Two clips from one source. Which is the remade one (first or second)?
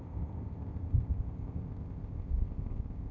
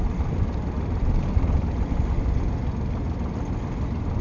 first